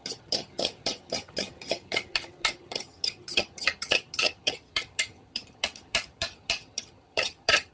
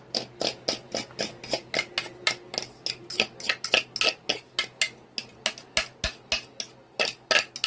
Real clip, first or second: second